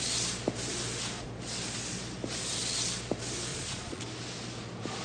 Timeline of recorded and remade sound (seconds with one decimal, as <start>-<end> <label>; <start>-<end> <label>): 0.0-3.5 recorded; 3.5-4.0 remade; 4.0-5.0 recorded